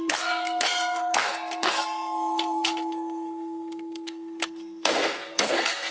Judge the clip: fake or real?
fake